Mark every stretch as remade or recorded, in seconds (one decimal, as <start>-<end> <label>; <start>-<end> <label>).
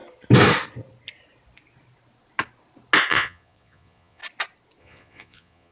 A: 0.0-3.1 recorded; 3.1-4.2 remade; 4.2-4.8 recorded; 4.8-5.7 remade